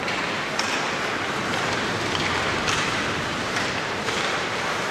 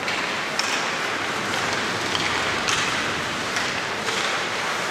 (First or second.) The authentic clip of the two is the second